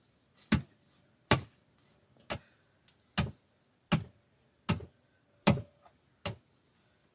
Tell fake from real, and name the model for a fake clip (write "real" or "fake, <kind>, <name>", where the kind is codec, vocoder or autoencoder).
real